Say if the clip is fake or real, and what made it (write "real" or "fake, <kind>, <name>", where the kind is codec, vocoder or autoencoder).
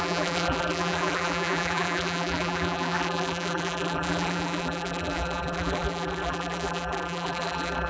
fake, vocoder, BigVGAN v2